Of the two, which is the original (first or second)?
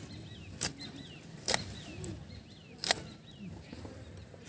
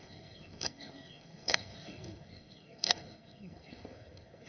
first